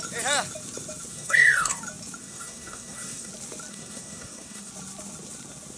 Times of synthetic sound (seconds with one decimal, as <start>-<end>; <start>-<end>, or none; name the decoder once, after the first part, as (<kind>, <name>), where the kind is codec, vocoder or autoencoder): 1.1-1.8 (codec, SNAC); 2.2-3.3; 3.7-4.7